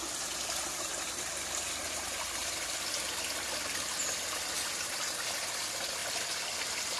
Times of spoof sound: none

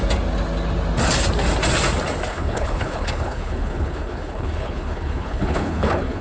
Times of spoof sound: 2.3-6.2 (codec, HILCodec)

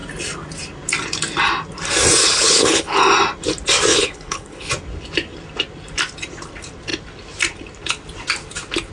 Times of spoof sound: 2.2-3.0 (codec, HILCodec); 3.9-4.7

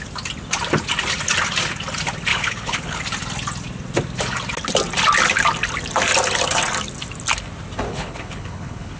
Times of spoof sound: 2.3-3.0 (codec, HILCodec); 7.9-9.0

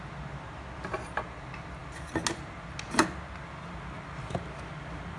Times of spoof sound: none

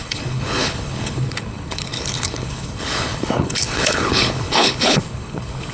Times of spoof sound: 0.0-5.7 (codec, HILCodec)